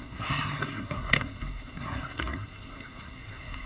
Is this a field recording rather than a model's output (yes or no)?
no